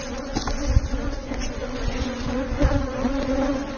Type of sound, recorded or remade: remade